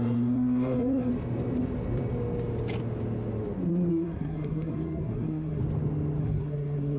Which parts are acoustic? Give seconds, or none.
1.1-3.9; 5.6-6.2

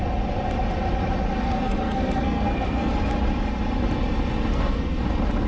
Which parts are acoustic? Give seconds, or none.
0.0-1.4; 2.9-4.5; 5.0-5.5

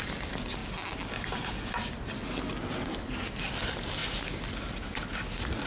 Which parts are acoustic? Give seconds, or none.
0.0-5.7

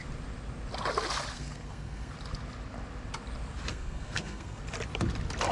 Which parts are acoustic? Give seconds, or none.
0.0-1.3; 2.1-3.7; 4.6-5.5